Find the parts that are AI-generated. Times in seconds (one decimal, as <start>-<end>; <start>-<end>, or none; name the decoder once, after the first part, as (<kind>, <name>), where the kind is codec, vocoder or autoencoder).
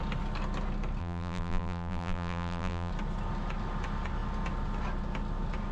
1.0-2.9 (vocoder, BigVGAN v2)